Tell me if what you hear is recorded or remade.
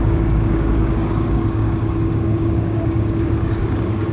remade